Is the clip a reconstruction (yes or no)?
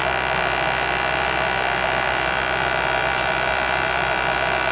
no